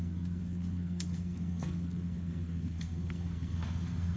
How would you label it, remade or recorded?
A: remade